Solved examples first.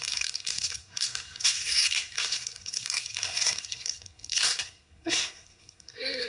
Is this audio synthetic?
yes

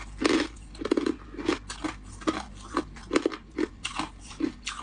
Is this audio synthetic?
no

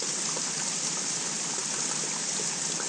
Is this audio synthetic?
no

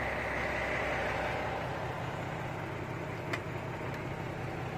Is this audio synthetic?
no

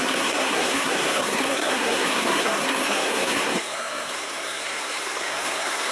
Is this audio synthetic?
yes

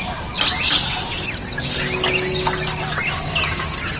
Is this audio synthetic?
no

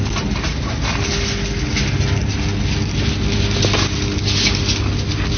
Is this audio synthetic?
no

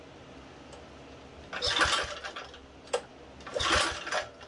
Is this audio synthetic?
no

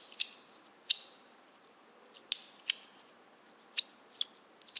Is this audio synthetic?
no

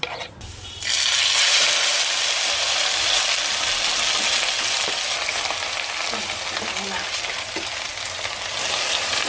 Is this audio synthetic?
no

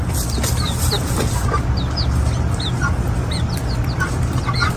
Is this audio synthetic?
no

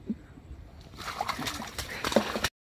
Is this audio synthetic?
no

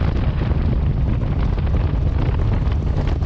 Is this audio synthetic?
no